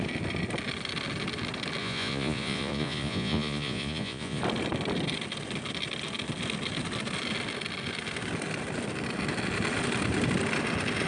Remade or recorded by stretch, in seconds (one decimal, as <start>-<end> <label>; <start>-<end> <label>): 0.0-1.8 recorded; 1.8-4.4 remade; 4.4-11.1 recorded